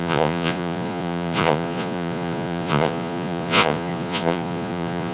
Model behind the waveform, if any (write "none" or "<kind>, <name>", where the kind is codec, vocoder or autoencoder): vocoder, Vocos